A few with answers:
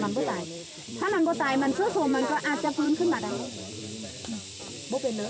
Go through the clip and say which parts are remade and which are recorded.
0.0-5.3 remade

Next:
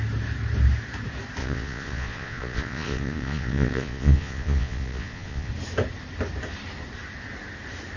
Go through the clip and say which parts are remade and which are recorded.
0.0-1.4 recorded; 1.4-5.5 remade; 5.5-8.0 recorded

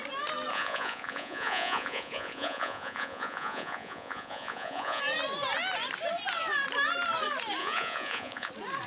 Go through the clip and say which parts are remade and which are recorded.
0.0-0.5 recorded; 0.5-5.0 remade; 5.0-7.6 recorded; 7.6-8.5 remade; 8.5-8.9 recorded

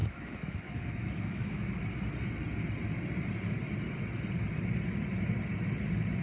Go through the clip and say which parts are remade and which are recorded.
0.0-1.7 remade; 1.7-6.2 recorded